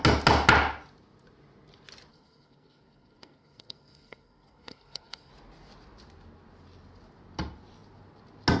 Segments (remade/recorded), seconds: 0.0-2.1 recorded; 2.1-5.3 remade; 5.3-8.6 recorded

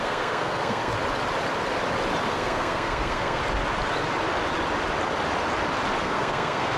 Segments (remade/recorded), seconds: 0.0-0.9 remade; 0.9-2.3 recorded; 2.3-3.4 remade; 3.4-6.0 recorded; 6.0-6.8 remade

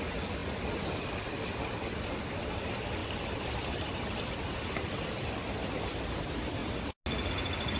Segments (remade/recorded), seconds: 0.0-7.8 recorded

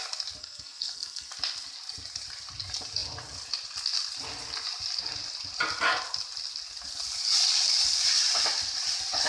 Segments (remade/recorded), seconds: 0.0-0.4 recorded; 0.4-1.3 remade; 1.3-9.3 recorded

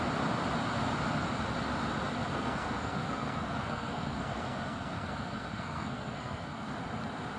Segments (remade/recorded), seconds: 0.0-2.3 recorded; 2.3-6.7 remade; 6.7-7.4 recorded

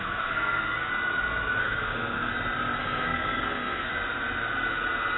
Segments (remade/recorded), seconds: 0.0-0.9 remade; 0.9-1.6 recorded; 1.6-2.3 remade; 2.3-2.8 recorded; 2.8-3.9 remade; 3.9-5.2 recorded